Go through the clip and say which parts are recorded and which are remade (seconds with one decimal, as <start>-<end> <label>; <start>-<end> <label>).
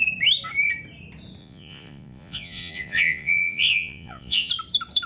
0.0-1.4 recorded; 1.4-4.5 remade; 4.5-5.1 recorded